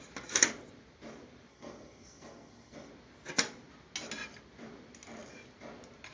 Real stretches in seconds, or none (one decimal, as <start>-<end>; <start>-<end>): 0.0-1.5; 2.9-6.1